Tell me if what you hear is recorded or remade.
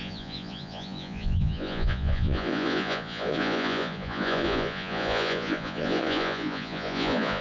remade